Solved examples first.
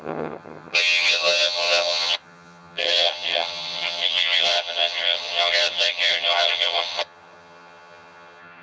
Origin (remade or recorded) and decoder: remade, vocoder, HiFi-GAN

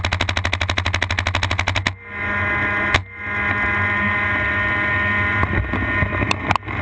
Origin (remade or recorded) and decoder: recorded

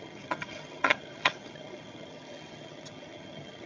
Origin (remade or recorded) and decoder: remade, vocoder, HiFi-GAN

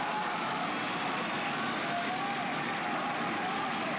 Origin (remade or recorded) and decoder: recorded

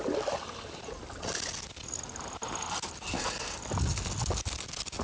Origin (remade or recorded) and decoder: recorded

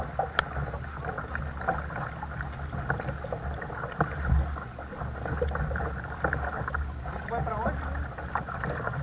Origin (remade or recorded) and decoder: recorded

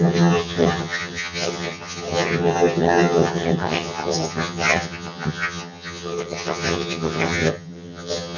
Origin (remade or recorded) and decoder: remade, vocoder, HiFi-GAN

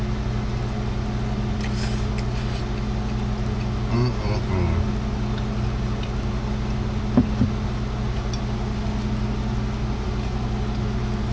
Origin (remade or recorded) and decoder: recorded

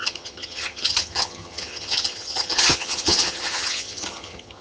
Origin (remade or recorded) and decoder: remade, vocoder, HiFi-GAN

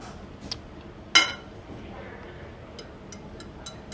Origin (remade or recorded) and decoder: recorded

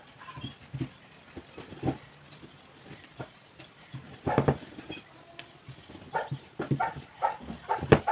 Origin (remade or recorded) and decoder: recorded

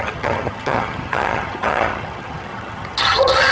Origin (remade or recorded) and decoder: remade, vocoder, HiFi-GAN